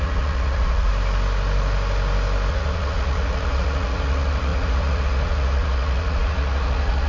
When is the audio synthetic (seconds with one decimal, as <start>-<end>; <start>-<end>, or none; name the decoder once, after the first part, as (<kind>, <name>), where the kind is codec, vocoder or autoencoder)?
0.0-0.9 (vocoder, Vocos); 2.5-7.1